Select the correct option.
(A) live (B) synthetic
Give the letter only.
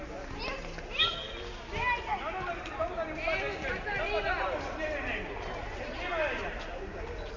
A